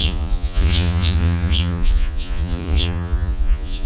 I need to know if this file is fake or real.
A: fake